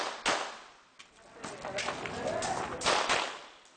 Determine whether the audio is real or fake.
real